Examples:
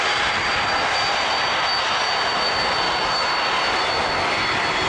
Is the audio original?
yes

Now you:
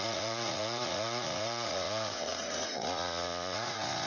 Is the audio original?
no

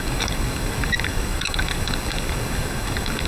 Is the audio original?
no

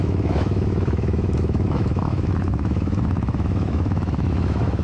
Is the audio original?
no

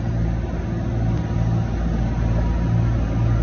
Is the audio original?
yes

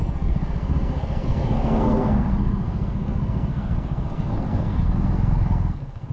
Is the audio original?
no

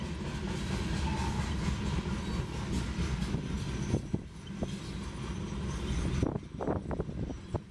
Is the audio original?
yes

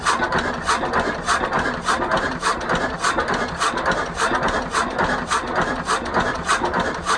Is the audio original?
yes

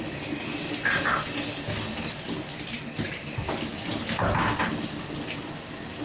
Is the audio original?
yes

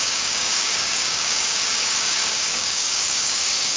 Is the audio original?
no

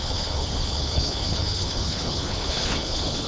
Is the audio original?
no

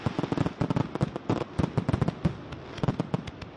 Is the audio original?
yes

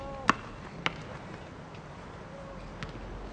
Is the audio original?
yes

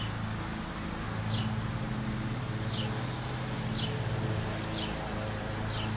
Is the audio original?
yes